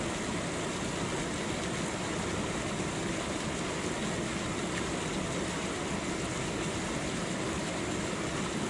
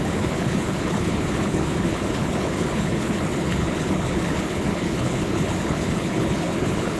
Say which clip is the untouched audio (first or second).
first